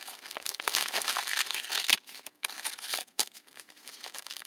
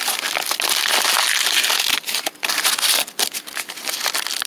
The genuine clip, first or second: second